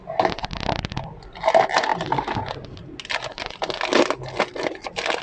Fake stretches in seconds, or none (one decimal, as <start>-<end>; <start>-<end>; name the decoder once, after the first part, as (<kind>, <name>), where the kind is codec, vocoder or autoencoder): none